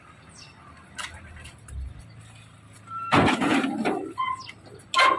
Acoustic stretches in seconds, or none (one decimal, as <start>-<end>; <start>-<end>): 0.0-3.5; 4.5-5.2